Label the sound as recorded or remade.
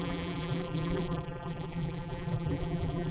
remade